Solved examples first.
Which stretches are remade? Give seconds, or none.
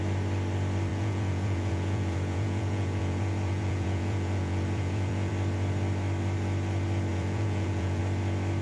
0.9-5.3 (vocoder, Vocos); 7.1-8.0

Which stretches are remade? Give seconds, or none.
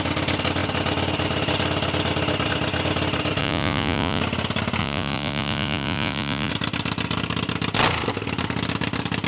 3.4-4.2 (vocoder, Vocos); 4.8-6.5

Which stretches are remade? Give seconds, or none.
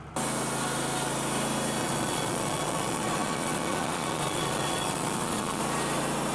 1.8-5.6 (vocoder, Vocos)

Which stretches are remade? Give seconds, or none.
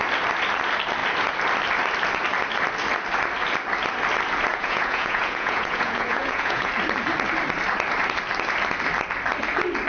4.5-6.7 (vocoder, Vocos)